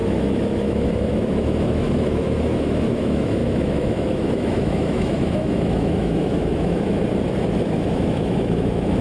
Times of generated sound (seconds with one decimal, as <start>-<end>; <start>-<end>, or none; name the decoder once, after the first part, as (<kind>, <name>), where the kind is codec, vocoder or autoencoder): 0.0-7.0 (autoencoder, DAC-VAE); 7.6-9.0